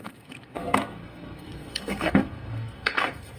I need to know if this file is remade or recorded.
remade